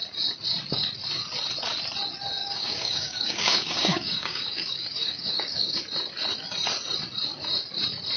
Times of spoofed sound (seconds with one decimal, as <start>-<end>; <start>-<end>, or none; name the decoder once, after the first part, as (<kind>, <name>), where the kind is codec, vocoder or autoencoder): 2.4-5.8 (codec, DAC)